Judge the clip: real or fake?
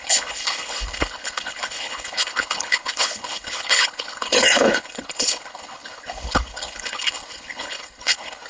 fake